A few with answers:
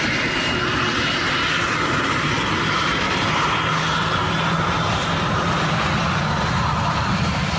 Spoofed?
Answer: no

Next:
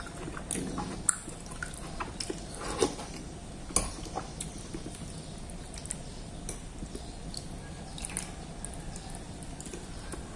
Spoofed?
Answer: no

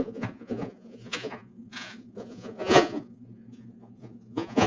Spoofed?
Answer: yes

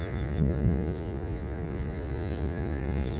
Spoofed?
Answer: yes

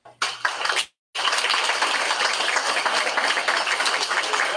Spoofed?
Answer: no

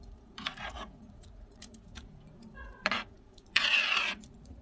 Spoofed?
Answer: yes